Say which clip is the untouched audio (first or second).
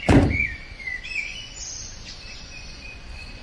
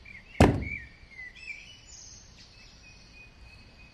second